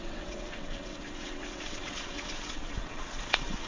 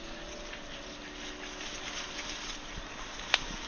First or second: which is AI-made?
first